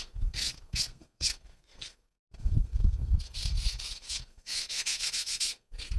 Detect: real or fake fake